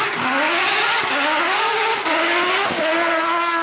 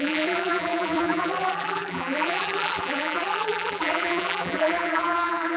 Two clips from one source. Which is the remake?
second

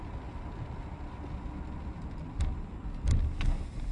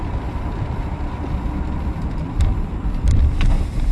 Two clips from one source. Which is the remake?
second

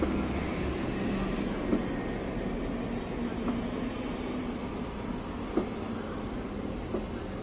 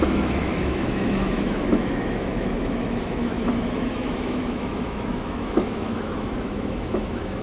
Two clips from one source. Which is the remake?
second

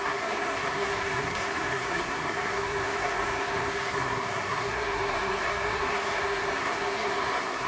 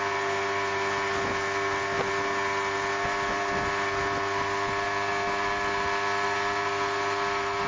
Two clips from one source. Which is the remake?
first